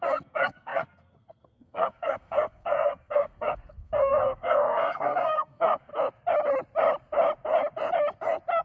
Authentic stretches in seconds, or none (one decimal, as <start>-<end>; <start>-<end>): 5.9-8.6